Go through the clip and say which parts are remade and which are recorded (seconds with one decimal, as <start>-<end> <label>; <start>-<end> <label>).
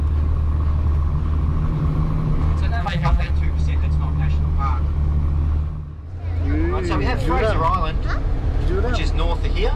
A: 0.0-2.8 recorded; 2.8-3.3 remade; 3.3-9.8 recorded